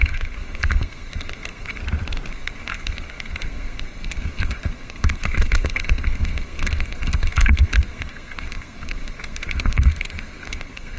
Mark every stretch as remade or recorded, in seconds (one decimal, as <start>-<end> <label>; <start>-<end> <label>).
0.0-1.8 remade; 1.8-2.3 recorded; 2.3-11.0 remade